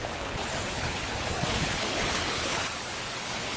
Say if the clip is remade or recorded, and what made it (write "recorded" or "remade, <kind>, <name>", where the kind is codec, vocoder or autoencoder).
remade, codec, HILCodec